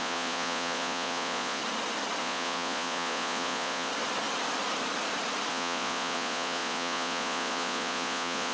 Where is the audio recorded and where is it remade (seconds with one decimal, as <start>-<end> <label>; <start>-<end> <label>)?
0.0-1.6 remade; 1.6-2.2 recorded; 2.2-3.9 remade; 3.9-5.5 recorded; 5.5-8.5 remade